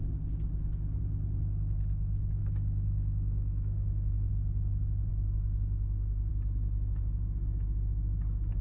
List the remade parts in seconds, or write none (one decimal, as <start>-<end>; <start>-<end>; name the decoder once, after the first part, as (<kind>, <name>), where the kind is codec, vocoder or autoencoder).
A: 2.4-4.3 (autoencoder, DAC-VAE)